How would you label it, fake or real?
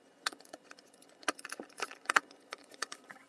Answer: fake